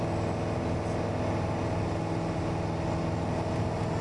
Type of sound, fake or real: real